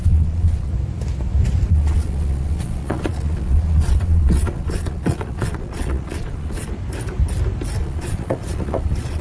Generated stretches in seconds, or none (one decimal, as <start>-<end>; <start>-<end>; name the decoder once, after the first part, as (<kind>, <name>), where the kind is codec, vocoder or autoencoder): 0.0-0.7 (vocoder, Vocos); 1.7-6.7; 7.8-9.2

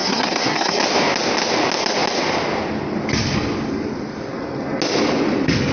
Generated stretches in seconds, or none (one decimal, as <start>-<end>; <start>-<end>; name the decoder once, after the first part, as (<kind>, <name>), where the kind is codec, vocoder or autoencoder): 0.0-0.8 (codec, SNAC)

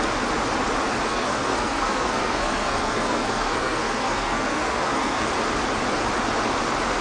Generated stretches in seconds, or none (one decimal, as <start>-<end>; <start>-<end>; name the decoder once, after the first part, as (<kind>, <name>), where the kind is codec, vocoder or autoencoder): 1.1-5.3 (codec, SNAC)

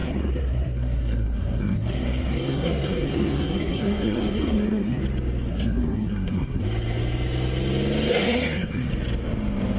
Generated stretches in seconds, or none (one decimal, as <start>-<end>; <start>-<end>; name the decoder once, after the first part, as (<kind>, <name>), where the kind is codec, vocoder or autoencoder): 0.0-5.0 (codec, SNAC); 5.5-6.6; 8.1-8.9

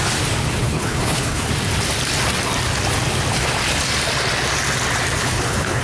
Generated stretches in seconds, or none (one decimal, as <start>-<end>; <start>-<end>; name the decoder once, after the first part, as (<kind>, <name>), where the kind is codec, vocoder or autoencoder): 0.6-1.5 (codec, HILCodec); 5.2-5.8

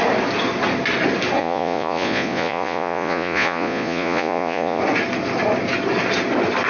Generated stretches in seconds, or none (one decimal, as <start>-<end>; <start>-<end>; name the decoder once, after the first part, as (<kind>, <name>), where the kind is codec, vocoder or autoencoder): 1.4-4.8 (vocoder, Vocos)

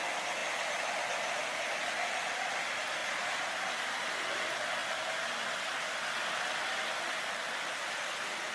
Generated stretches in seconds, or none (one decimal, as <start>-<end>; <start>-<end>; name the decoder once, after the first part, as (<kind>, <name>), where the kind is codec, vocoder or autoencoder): 4.8-6.6 (vocoder, BigVGAN v2)

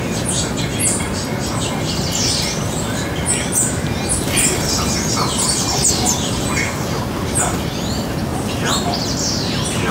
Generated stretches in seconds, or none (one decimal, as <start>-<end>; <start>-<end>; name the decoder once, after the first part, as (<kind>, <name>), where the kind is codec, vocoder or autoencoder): 8.3-8.9 (vocoder, BigVGAN v2)